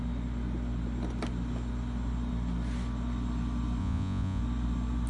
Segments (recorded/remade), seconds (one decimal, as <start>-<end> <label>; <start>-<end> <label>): 0.0-3.8 recorded; 3.8-4.4 remade; 4.4-5.1 recorded